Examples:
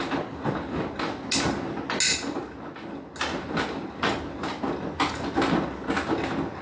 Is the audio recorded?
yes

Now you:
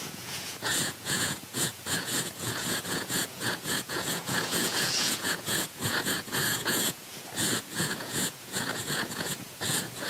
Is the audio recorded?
no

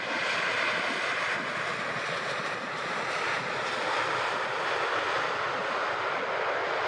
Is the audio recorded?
yes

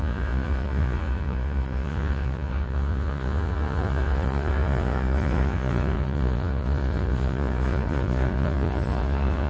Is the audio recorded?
no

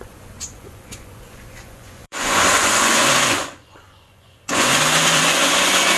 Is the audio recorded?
no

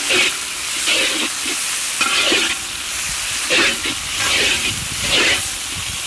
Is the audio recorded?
yes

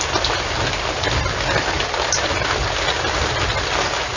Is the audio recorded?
yes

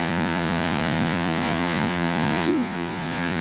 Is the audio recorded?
no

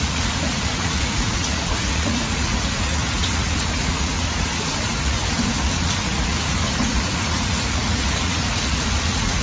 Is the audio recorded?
no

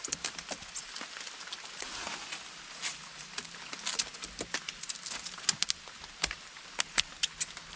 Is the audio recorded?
yes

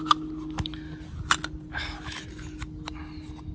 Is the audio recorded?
yes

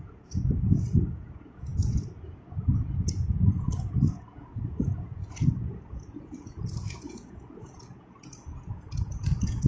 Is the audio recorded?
no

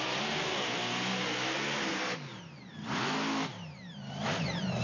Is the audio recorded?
yes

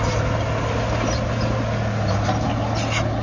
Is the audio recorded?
yes